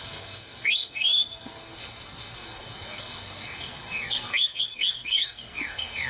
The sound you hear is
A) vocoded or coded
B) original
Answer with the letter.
A